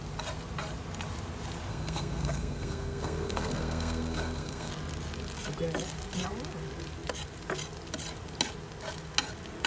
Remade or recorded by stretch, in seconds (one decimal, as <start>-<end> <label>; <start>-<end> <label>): 0.0-1.7 recorded; 1.7-4.7 remade; 4.7-9.7 recorded